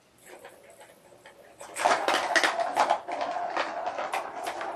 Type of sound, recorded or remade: recorded